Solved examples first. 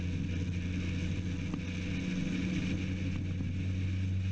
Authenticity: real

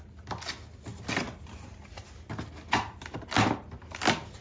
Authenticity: real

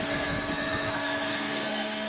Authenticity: fake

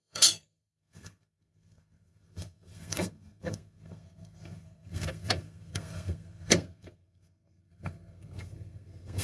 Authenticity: fake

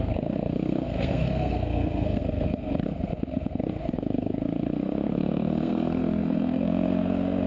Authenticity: fake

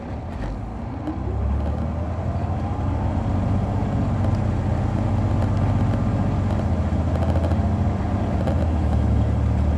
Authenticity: real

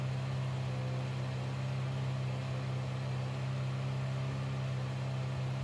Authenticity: real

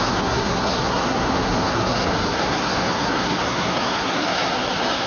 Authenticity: fake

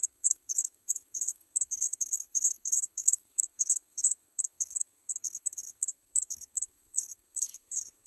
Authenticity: fake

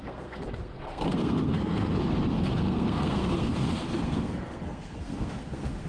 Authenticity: fake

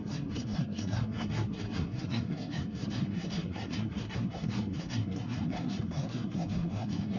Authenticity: fake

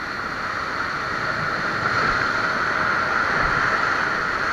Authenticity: real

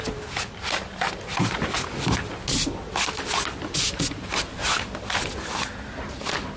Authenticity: real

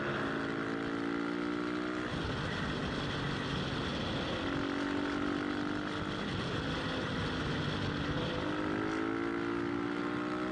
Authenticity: real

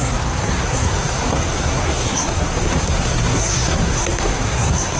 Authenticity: fake